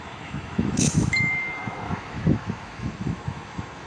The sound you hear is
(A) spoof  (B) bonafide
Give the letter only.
A